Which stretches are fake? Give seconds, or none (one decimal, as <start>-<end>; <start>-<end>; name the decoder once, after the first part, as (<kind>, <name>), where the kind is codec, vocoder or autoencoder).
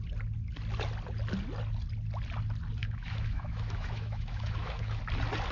2.8-5.0 (autoencoder, DAC-VAE)